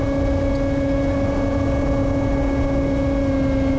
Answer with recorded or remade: recorded